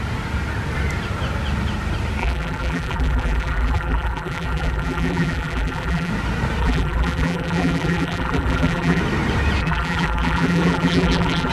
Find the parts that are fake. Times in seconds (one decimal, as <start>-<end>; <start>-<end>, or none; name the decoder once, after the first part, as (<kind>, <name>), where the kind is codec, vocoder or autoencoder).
2.2-6.1 (vocoder, BigVGAN v2); 6.6-9.0; 9.6-11.5